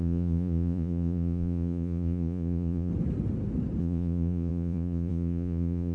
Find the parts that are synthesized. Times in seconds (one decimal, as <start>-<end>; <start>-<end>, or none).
0.0-2.9; 3.8-5.9